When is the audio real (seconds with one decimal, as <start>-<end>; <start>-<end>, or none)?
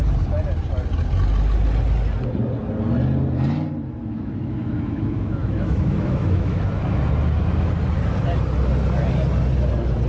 0.0-4.0; 6.6-10.1